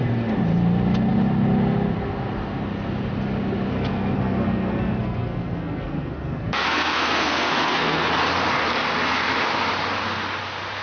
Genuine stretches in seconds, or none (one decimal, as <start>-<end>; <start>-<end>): 0.0-3.7; 8.0-10.8